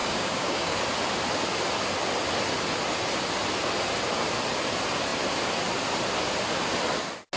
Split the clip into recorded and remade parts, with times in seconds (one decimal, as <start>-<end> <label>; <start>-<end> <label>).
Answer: 0.0-0.8 remade; 0.8-7.4 recorded